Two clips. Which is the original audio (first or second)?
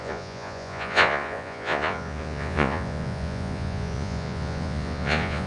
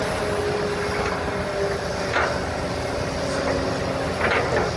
second